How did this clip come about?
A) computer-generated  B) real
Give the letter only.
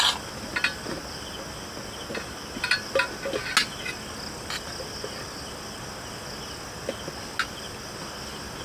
B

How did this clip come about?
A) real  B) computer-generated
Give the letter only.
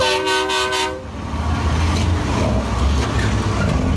A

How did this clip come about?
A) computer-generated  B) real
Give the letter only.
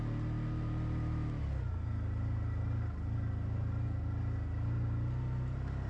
B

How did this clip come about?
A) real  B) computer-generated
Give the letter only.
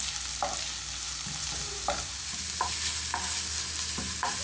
A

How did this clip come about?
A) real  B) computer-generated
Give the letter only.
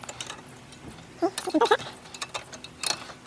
A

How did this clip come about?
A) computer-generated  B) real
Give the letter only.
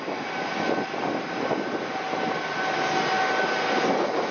B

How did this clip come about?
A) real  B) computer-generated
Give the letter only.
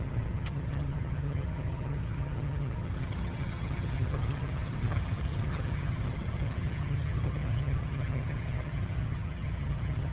B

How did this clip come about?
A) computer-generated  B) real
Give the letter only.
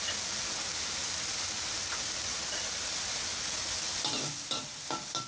B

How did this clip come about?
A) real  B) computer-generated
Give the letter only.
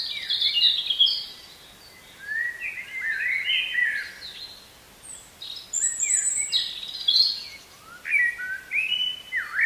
A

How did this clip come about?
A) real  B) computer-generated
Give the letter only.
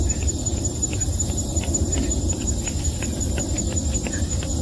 A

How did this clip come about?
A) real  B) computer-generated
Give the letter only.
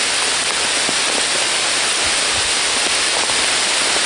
A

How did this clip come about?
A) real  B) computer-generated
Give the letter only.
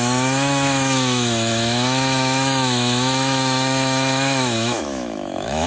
B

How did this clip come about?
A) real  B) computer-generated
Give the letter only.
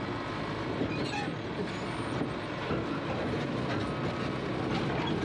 A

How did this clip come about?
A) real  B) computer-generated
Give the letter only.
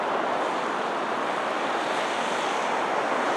A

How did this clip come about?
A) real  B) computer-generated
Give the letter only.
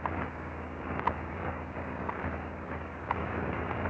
B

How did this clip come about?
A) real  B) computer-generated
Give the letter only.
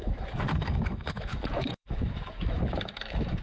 B